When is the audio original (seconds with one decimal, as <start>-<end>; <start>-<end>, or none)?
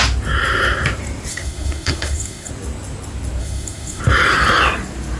0.0-1.3; 2.5-3.4; 4.0-5.2